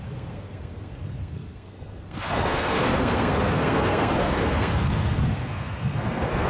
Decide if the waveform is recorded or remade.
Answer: remade